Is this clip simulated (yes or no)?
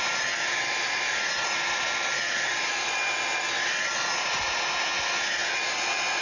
no